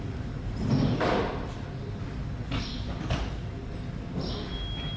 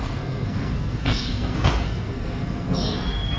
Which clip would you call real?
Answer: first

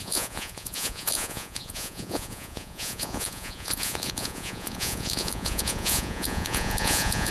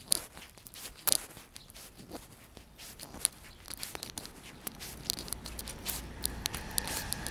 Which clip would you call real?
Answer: second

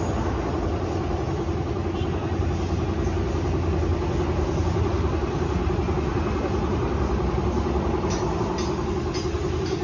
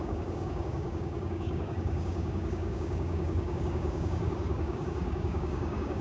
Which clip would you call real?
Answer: first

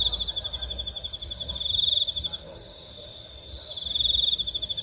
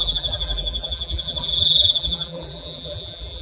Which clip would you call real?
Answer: first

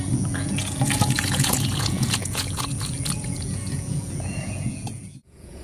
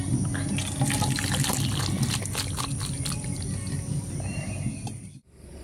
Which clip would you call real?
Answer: second